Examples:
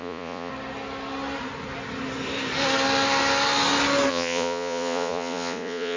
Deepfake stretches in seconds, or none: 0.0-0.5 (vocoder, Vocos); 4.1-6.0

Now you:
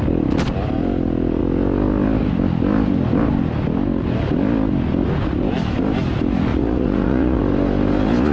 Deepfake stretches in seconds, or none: 6.5-7.4 (vocoder, Vocos)

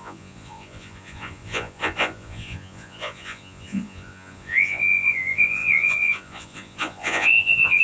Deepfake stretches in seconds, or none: 0.0-7.8 (vocoder, Vocos)

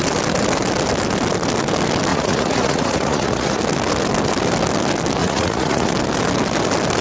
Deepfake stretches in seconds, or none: 2.1-3.6 (vocoder, Vocos); 5.2-5.9

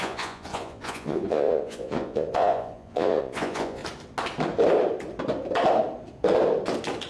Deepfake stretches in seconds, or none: 0.0-3.8 (vocoder, Vocos)

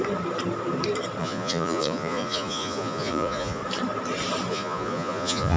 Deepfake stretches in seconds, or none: 1.2-3.6 (vocoder, Vocos); 4.5-5.6

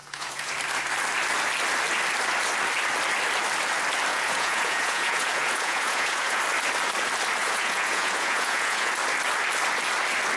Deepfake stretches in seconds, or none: 0.0-0.5 (vocoder, Vocos); 4.1-6.4; 7.4-8.9